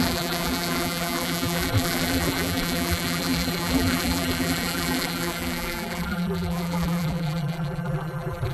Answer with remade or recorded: remade